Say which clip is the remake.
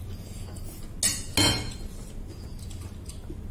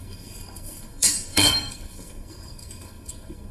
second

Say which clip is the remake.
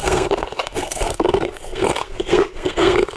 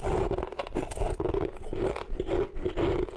first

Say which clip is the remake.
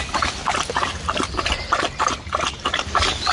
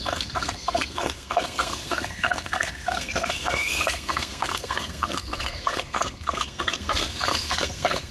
second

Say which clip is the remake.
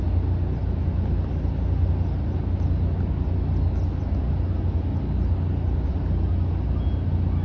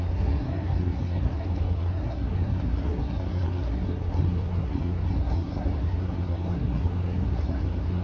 second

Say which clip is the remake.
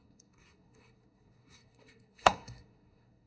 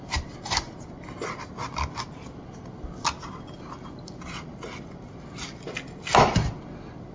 first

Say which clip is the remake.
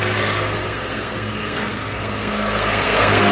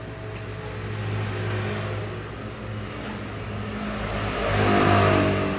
first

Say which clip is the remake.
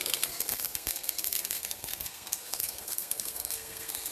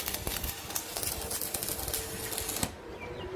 first